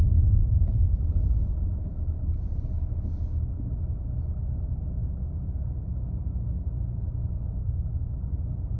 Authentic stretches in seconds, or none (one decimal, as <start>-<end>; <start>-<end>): 0.0-0.4; 1.0-7.6; 8.2-8.8